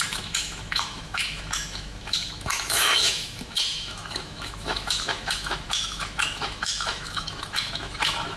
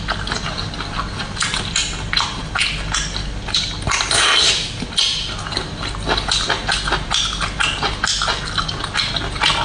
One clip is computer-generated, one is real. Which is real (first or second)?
second